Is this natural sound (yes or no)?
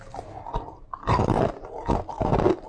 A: yes